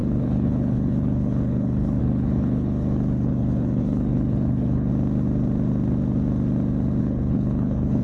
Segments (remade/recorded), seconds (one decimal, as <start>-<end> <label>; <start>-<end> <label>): 0.0-4.9 remade; 4.9-7.0 recorded; 7.0-8.0 remade